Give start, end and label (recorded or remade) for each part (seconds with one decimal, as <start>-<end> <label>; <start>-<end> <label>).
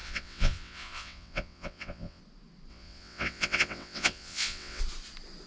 0.0-2.2 remade; 2.2-2.7 recorded; 2.7-4.8 remade; 4.8-5.5 recorded